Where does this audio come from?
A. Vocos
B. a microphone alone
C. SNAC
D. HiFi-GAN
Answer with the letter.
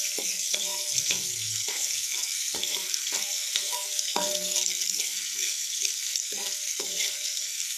C